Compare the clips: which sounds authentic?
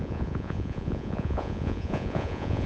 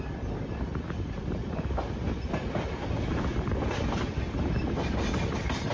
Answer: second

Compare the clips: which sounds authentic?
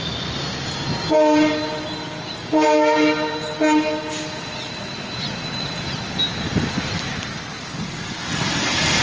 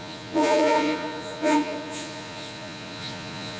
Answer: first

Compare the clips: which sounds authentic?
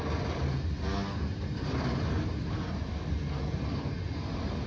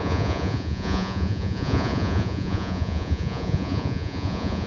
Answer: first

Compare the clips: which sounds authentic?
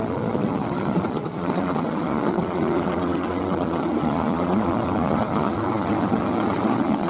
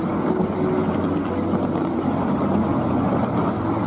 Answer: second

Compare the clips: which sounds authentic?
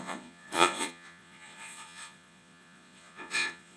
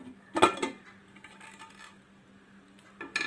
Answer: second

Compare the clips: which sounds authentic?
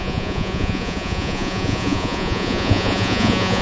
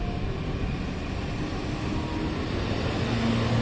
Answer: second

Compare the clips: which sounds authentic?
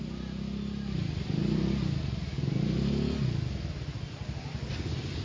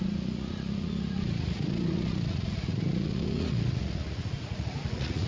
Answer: first